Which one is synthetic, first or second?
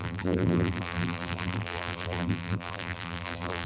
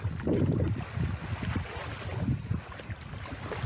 first